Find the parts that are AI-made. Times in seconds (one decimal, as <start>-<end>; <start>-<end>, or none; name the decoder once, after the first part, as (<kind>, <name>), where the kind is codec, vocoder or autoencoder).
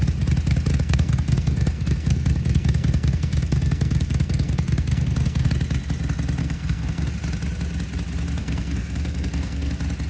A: 0.7-5.5 (codec, SNAC); 6.4-7.1; 8.4-9.7